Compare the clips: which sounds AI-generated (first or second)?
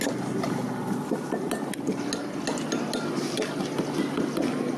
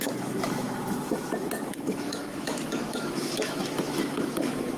second